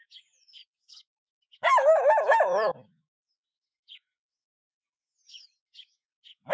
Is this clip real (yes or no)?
no